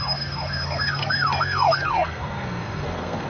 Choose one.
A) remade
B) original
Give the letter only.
A